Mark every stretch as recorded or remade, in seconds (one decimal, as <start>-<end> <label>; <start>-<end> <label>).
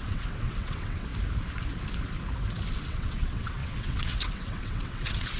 0.0-1.1 remade; 1.1-2.8 recorded; 2.8-5.4 remade